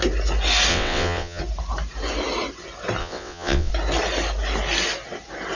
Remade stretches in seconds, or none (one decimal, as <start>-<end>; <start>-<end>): 0.7-1.4; 3.0-3.7